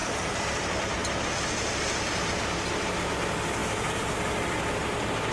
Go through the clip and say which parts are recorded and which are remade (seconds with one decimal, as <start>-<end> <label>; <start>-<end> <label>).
0.0-0.6 remade; 0.6-5.3 recorded